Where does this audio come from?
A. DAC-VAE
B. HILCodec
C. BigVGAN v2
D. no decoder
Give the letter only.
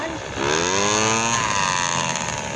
D